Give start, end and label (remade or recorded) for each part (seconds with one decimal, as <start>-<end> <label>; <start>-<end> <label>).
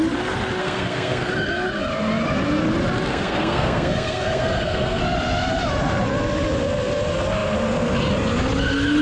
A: 0.0-0.6 recorded; 0.6-1.3 remade; 1.3-3.1 recorded; 3.1-5.0 remade; 5.0-9.0 recorded